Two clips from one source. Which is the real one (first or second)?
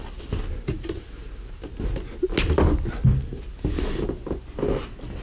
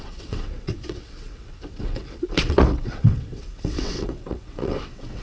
first